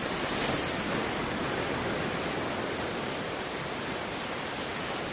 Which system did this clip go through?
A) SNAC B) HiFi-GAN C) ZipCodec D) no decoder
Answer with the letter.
D